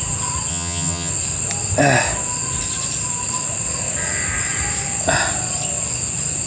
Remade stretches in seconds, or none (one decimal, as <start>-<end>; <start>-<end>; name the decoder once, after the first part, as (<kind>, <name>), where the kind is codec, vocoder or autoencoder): 0.5-1.1 (vocoder, HiFi-GAN)